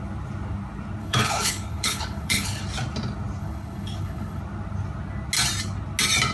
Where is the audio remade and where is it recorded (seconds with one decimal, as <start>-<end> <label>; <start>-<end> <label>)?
0.0-1.0 recorded; 1.0-2.6 remade; 2.6-3.4 recorded; 3.4-4.4 remade; 4.4-6.3 recorded